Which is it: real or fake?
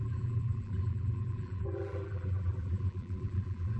fake